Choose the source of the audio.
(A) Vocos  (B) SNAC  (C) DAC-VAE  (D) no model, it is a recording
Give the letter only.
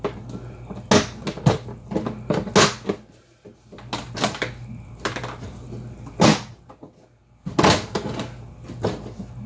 D